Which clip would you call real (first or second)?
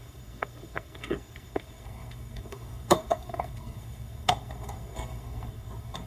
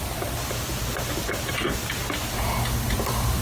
second